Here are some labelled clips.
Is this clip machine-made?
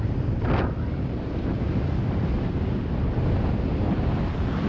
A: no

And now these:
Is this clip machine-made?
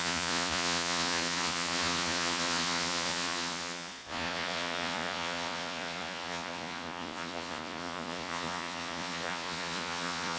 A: yes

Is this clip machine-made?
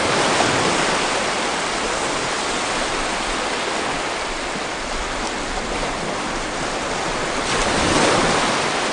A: no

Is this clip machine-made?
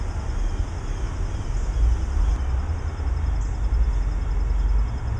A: no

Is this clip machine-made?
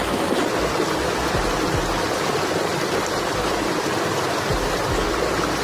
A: no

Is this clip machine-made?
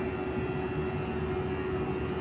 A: no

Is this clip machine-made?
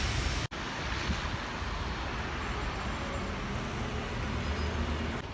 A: no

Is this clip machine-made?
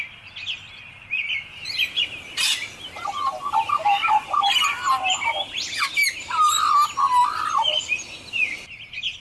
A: no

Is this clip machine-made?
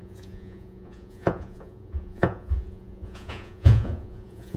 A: yes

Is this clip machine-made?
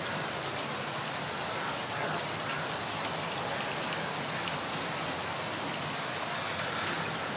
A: no